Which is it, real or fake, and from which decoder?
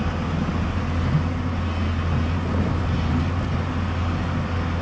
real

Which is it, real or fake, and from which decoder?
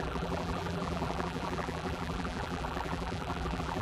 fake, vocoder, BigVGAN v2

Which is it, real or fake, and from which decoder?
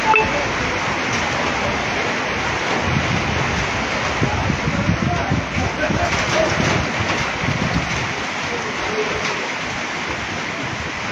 real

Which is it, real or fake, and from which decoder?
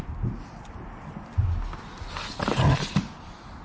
real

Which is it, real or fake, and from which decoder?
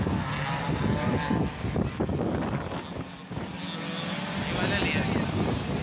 real